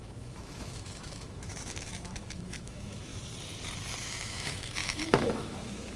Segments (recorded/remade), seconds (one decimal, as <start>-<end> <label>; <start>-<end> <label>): 0.0-3.1 remade; 3.1-4.0 recorded; 4.0-6.0 remade